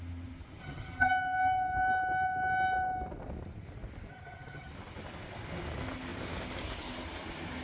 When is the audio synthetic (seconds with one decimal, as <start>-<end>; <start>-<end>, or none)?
0.6-1.1; 4.1-4.7